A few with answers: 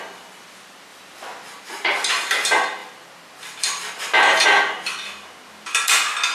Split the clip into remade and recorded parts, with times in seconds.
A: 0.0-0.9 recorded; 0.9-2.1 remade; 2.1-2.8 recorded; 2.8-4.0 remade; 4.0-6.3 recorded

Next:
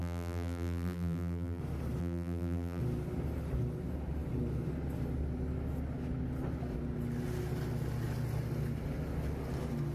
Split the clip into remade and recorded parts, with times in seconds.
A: 0.0-1.6 remade; 1.6-2.0 recorded; 2.0-2.8 remade; 2.8-9.9 recorded